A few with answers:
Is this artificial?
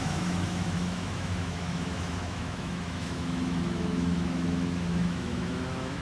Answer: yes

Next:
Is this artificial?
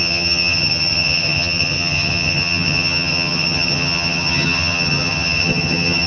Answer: yes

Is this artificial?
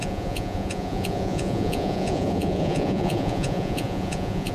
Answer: yes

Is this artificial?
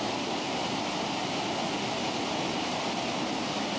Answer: yes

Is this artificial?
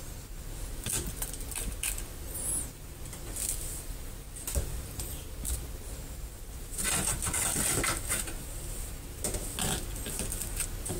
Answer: no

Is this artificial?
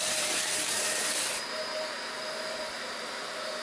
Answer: yes